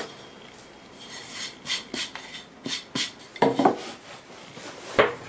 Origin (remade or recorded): recorded